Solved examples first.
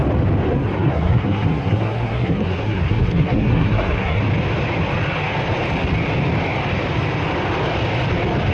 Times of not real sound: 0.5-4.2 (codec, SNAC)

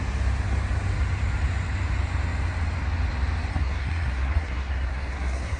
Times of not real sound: 3.5-5.6 (codec, SNAC)

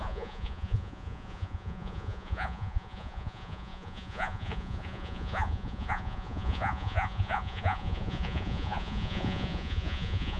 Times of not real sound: 0.0-10.4 (vocoder, Vocos)

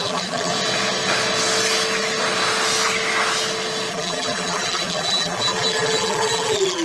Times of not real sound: 0.0-0.5 (vocoder, BigVGAN v2); 3.9-6.8

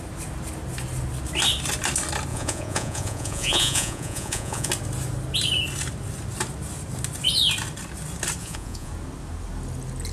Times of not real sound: 2.3-4.7 (vocoder, Vocos); 8.4-8.9